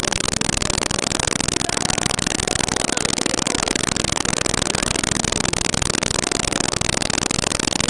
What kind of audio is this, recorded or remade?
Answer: recorded